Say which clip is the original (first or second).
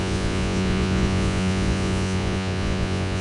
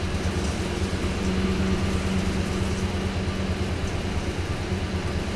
second